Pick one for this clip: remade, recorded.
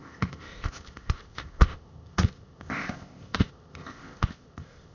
remade